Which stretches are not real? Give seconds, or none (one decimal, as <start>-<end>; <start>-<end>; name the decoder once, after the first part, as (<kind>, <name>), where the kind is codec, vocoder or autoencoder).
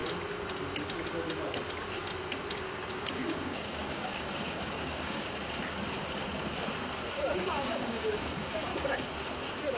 2.9-5.3 (codec, DAC); 7.1-8.7